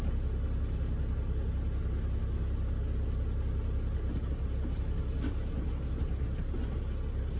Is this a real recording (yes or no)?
yes